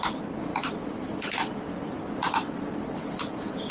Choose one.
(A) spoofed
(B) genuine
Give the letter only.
B